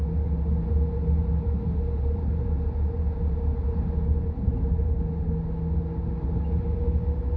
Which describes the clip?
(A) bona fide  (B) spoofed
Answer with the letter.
A